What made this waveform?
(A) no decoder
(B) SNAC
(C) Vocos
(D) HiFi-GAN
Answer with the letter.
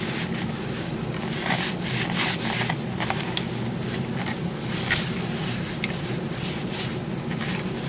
A